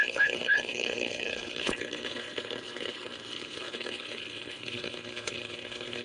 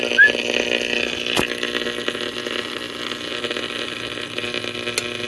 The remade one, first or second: first